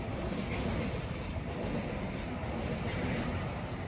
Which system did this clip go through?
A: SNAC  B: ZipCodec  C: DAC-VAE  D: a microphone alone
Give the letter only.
D